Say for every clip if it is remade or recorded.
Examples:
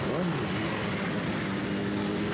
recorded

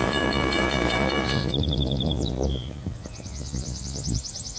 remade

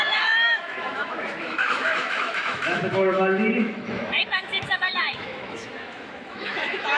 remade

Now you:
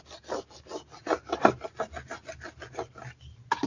recorded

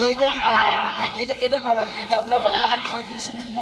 remade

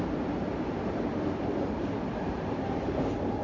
remade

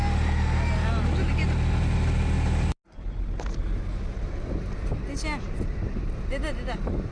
recorded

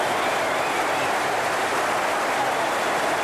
recorded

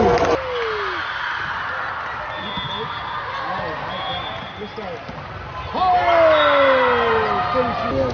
recorded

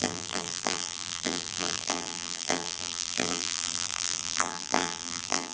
remade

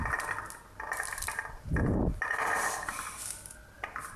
remade